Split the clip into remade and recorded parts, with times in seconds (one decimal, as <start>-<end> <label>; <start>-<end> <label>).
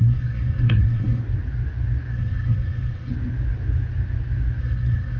0.0-1.2 remade; 1.2-2.1 recorded; 2.1-3.1 remade; 3.1-4.6 recorded; 4.6-5.2 remade